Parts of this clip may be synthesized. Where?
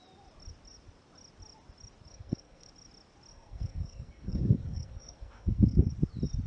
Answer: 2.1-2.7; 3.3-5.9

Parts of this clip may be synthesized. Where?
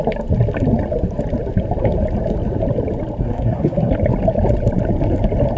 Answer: 3.2-3.9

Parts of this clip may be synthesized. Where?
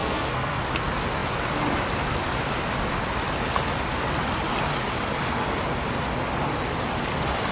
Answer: 0.0-0.6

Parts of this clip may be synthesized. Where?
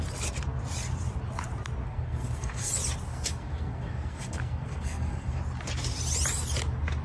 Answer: 1.9-2.7; 3.1-5.4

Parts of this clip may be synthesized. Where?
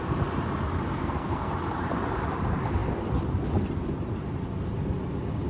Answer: 1.0-1.5